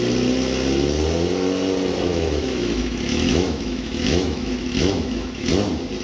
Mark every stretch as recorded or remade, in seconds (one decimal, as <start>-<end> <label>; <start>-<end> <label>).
0.0-2.1 recorded; 2.1-5.5 remade; 5.5-6.0 recorded